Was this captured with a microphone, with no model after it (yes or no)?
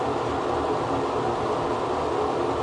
yes